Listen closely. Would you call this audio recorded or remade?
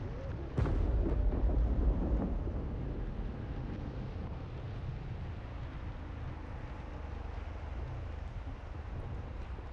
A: recorded